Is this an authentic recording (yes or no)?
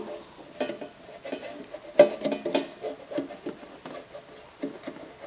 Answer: yes